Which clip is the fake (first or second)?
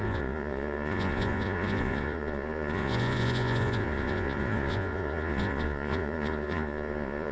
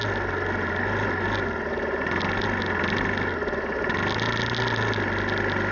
first